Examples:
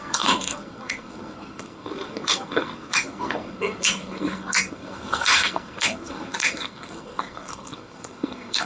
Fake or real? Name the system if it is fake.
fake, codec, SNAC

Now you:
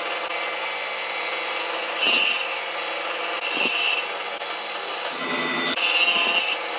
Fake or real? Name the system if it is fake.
real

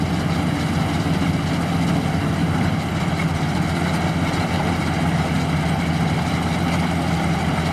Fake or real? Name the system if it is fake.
real